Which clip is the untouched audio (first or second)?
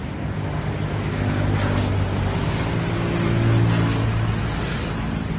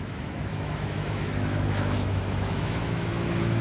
first